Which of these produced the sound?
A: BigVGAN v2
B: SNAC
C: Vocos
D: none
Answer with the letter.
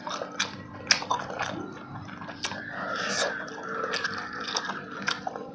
D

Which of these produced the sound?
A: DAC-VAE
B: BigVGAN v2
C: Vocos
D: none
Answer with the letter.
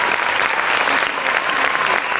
D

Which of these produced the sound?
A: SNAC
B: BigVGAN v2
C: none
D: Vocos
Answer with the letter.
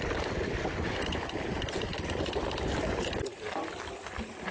C